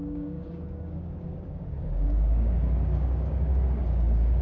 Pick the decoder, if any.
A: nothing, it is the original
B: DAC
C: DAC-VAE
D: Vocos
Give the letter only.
B